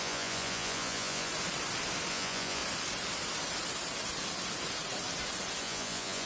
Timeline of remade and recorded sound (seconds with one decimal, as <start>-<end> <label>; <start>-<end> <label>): 0.0-1.3 remade; 1.3-2.1 recorded; 2.1-2.6 remade; 2.6-5.6 recorded; 5.6-6.3 remade